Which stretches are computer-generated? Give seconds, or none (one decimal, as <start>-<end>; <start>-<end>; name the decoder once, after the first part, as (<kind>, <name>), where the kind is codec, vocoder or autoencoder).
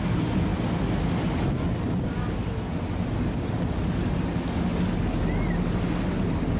none